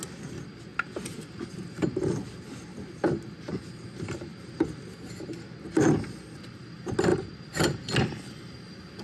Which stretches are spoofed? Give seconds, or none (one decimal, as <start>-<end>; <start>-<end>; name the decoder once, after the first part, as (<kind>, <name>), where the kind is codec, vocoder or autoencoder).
4.3-4.9 (vocoder, BigVGAN v2); 7.1-7.9